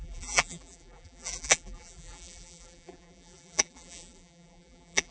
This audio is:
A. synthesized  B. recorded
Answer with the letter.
A